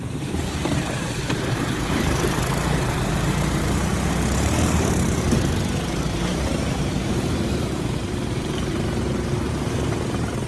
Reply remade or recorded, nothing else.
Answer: remade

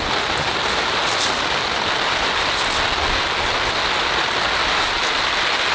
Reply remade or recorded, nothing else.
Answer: recorded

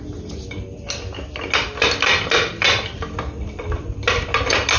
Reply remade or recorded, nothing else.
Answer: recorded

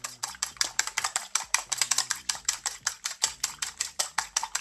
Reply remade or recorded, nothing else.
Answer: remade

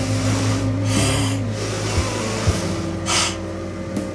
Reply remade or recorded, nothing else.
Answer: recorded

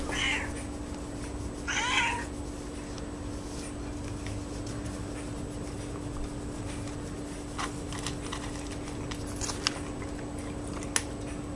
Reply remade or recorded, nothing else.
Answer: recorded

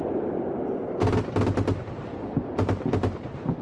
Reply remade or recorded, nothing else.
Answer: recorded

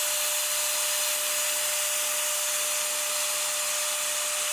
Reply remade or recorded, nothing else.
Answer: recorded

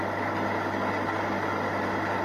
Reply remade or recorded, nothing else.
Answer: recorded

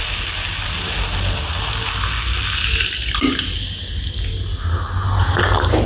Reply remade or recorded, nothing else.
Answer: recorded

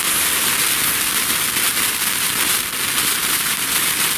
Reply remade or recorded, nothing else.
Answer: recorded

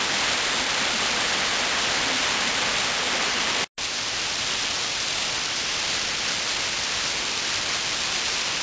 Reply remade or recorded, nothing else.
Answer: recorded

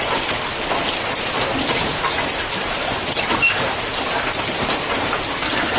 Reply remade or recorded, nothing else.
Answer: recorded